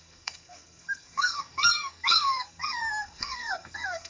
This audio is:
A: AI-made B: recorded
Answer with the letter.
A